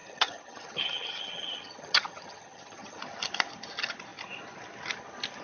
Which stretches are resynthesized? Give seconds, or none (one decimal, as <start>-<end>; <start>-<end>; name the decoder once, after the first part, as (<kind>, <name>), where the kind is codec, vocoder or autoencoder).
0.0-3.0 (vocoder, HiFi-GAN)